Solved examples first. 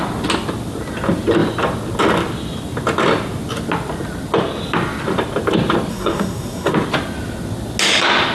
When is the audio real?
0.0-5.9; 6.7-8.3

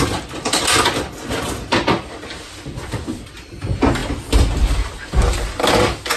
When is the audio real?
0.0-6.2

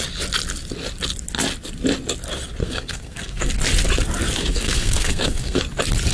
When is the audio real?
0.0-2.6; 3.5-4.4; 5.6-6.1

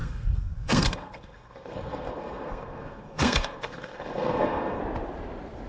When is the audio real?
4.8-5.7

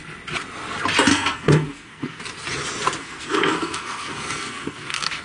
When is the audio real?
0.0-1.1; 2.2-3.0

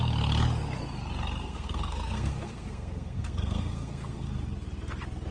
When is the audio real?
0.0-1.4; 4.3-5.3

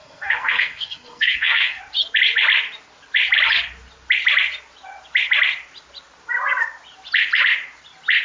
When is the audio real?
1.8-8.2